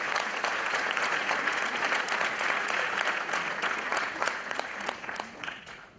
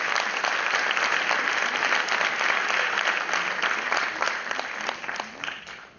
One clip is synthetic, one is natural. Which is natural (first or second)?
second